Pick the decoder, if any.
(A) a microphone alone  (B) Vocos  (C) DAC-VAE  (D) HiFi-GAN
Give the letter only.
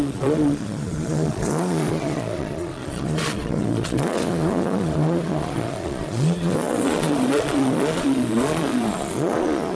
B